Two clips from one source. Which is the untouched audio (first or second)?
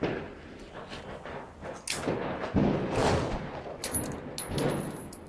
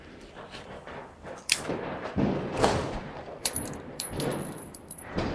first